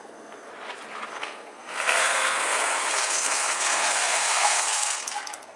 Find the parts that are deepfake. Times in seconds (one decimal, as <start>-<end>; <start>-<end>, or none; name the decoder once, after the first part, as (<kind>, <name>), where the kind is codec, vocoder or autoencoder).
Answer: 0.0-0.5 (codec, SNAC); 1.1-5.6